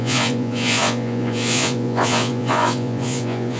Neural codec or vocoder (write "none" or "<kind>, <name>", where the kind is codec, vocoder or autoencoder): vocoder, Vocos